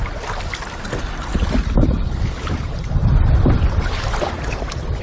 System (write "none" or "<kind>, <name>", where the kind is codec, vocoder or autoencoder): none